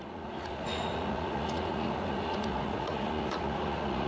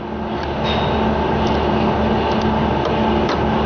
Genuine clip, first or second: second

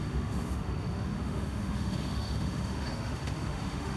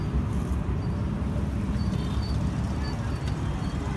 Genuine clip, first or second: second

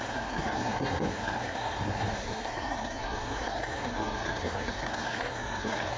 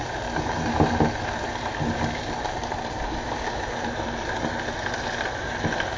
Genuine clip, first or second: second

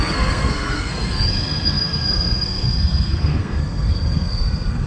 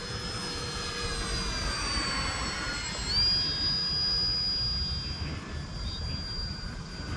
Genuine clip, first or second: second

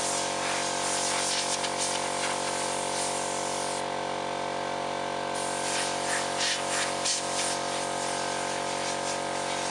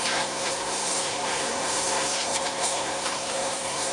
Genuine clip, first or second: first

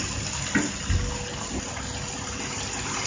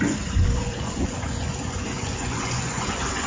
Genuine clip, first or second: first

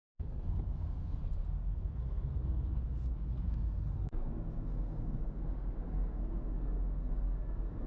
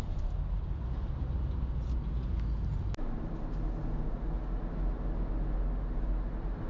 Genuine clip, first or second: second